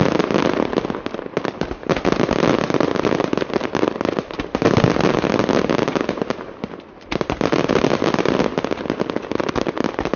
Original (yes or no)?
yes